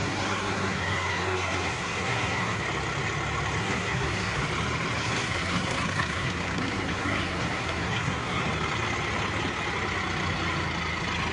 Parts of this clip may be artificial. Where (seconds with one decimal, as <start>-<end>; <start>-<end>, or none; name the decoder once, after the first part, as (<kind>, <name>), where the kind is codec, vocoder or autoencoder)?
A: 0.0-2.6 (codec, SNAC); 3.6-4.4; 5.0-8.4